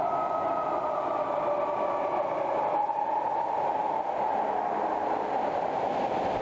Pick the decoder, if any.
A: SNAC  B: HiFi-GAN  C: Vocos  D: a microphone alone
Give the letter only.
D